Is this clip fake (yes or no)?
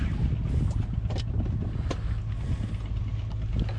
no